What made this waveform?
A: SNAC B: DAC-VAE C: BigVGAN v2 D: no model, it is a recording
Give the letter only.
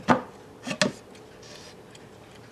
D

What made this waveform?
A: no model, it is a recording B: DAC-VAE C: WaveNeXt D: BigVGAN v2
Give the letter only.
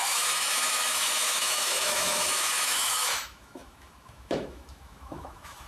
B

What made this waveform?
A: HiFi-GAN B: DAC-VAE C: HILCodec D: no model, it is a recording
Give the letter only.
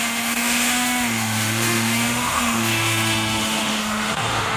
B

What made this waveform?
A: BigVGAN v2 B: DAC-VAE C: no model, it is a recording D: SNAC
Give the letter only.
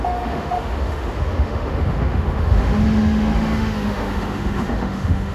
B